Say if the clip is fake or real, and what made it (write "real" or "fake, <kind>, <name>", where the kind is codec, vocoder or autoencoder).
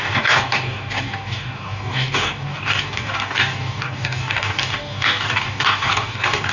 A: fake, codec, DAC